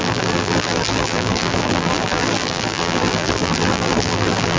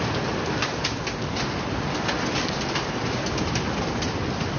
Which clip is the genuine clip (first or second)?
second